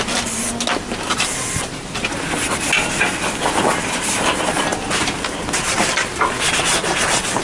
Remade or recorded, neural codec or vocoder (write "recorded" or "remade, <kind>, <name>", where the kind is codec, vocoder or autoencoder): recorded